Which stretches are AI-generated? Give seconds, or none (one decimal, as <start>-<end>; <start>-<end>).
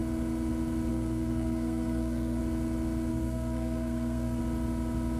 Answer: 0.9-2.4; 3.1-4.4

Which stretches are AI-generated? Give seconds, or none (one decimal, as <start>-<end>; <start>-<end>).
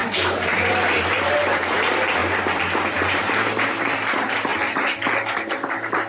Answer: 0.0-2.2; 2.9-4.5; 5.5-6.1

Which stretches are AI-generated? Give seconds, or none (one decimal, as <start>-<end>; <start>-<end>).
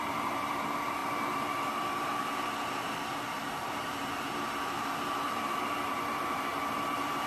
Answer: 0.0-7.3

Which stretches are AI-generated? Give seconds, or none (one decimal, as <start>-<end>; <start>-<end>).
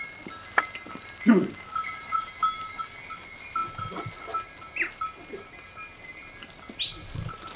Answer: none